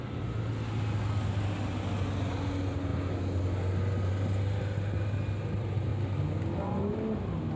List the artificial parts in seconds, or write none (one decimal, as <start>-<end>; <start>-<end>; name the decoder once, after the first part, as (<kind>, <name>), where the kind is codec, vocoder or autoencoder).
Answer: none